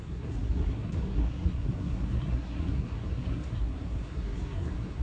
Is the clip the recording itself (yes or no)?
no